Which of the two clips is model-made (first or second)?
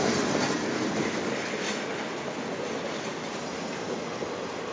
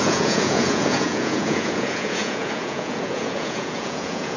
second